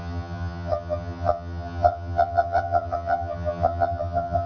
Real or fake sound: fake